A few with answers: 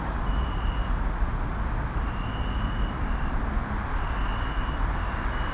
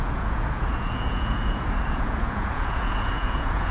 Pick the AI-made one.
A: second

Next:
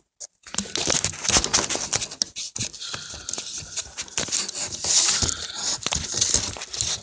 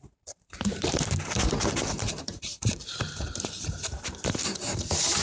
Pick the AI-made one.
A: second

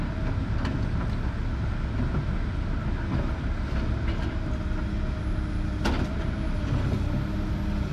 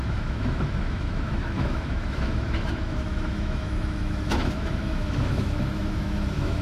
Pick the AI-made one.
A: second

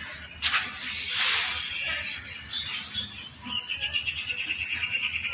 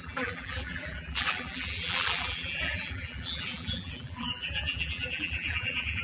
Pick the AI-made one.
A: second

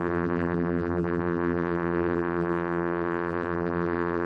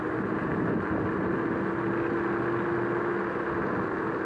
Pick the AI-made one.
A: first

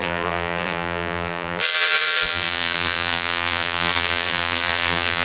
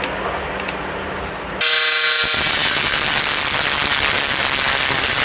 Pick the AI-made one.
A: first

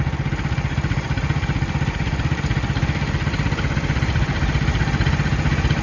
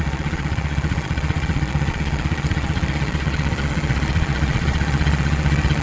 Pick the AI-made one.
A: second